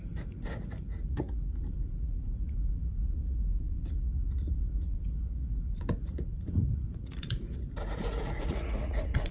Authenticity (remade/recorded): remade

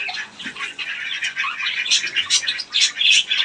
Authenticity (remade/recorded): remade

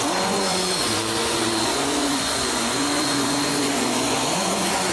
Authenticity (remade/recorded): remade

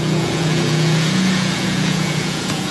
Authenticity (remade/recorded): remade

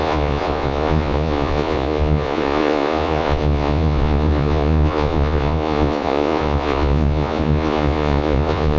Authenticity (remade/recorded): remade